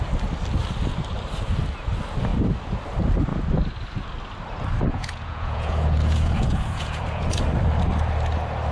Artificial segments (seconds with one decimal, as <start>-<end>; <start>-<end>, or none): 4.9-7.3